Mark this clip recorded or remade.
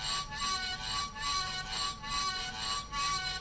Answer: recorded